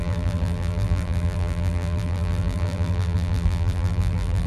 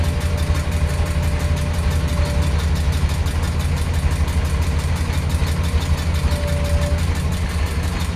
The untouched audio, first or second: second